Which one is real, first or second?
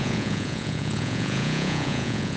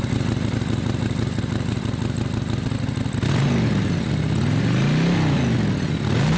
second